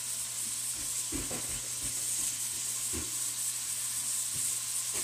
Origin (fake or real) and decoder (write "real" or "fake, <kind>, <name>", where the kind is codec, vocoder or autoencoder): real